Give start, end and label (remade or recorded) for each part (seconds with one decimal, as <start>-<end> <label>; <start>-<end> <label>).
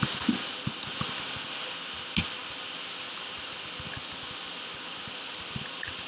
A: 0.0-6.1 recorded